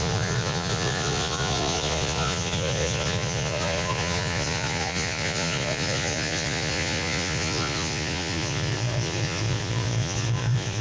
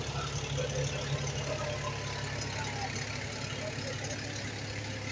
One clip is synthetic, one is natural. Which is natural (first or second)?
second